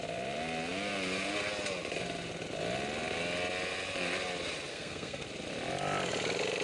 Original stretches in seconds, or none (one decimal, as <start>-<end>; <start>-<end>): 0.0-4.7; 5.3-6.6